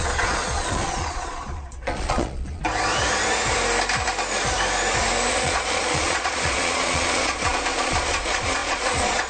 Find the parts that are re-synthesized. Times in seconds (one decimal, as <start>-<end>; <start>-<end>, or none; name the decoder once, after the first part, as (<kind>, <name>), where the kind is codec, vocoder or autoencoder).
0.0-2.6 (vocoder, Vocos); 5.3-9.3